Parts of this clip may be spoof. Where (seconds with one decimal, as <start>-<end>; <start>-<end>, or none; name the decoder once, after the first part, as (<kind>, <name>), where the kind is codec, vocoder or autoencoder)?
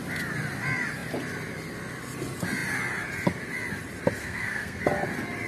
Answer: 4.2-4.8 (codec, SNAC)